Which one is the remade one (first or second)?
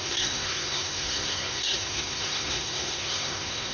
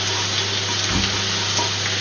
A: first